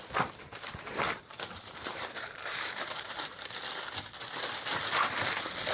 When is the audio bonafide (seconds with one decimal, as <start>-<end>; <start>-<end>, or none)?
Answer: 0.0-0.4; 3.6-5.7